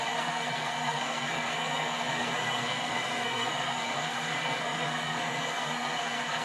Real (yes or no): no